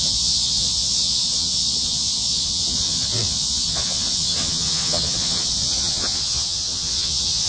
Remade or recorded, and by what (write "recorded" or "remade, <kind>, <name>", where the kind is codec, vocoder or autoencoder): remade, vocoder, Vocos